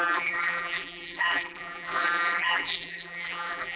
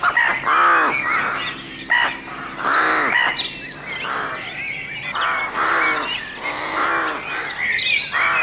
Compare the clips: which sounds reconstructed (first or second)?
first